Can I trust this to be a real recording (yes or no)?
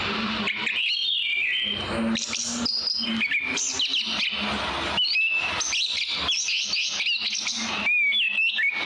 yes